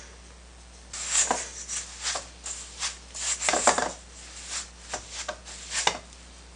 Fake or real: real